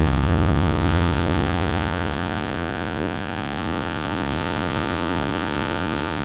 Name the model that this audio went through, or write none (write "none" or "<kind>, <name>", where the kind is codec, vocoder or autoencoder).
vocoder, Vocos